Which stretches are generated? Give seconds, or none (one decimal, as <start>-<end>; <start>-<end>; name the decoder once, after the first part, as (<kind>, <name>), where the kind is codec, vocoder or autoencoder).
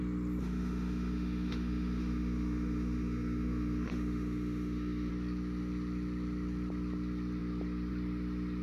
0.4-5.1 (autoencoder, DAC-VAE)